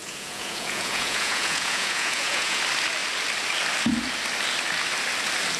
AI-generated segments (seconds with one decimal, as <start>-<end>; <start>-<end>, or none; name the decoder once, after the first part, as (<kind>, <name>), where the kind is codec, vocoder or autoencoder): 0.0-2.6 (vocoder, Vocos)